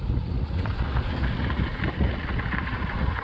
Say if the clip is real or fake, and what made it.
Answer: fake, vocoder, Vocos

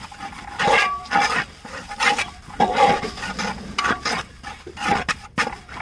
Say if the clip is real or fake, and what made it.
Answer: real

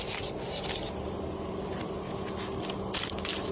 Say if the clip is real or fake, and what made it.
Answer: real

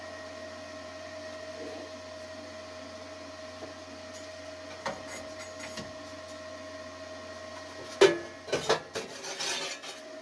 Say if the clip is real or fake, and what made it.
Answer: real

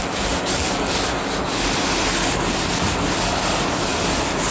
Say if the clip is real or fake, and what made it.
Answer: real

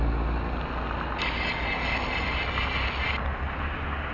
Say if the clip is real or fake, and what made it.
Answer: real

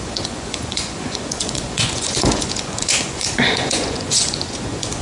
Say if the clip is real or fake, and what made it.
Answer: fake, vocoder, Vocos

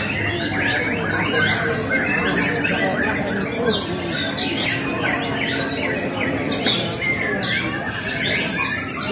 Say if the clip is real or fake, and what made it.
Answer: real